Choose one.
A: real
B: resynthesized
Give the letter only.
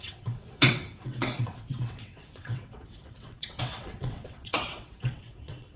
B